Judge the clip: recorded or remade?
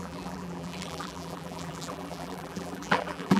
remade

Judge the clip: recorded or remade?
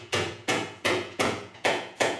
remade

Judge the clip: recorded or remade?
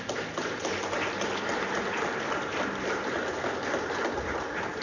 recorded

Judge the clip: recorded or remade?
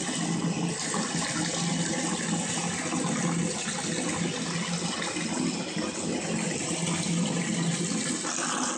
recorded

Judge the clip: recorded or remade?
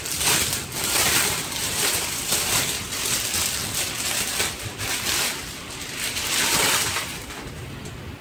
recorded